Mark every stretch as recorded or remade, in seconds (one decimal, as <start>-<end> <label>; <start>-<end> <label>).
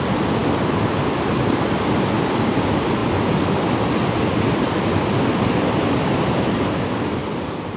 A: 0.0-7.8 recorded